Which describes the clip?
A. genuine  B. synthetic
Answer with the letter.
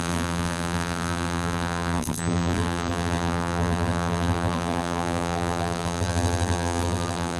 B